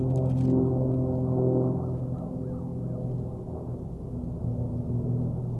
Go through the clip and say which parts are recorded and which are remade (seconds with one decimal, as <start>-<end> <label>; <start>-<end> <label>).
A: 0.0-5.6 recorded